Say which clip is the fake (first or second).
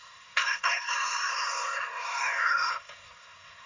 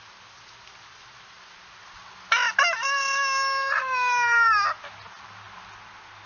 first